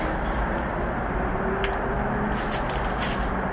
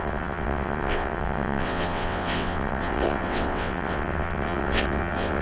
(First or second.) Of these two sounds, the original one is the first